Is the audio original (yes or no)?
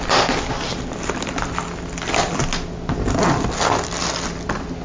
yes